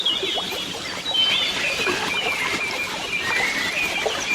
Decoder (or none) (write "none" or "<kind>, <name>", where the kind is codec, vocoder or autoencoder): none